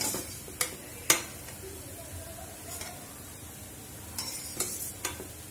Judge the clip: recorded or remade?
recorded